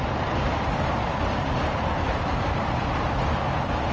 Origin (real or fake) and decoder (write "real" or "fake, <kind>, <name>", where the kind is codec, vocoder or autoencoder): fake, vocoder, BigVGAN v2